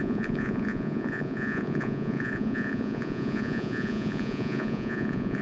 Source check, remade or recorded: remade